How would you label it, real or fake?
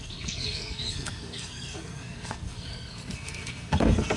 fake